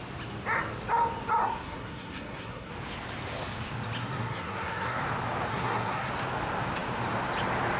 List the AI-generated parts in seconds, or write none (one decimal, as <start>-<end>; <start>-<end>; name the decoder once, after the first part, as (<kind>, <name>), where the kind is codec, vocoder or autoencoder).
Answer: 1.4-2.7 (codec, SNAC); 4.0-5.0; 5.5-6.1